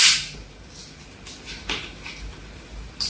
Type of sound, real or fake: real